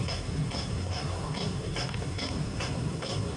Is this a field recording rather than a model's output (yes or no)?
no